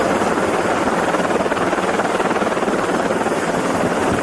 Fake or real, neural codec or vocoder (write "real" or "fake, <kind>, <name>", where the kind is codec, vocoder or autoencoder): real